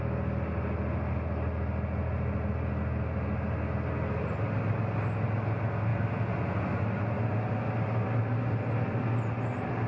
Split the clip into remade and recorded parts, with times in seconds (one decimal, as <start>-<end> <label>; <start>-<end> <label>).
0.0-9.9 recorded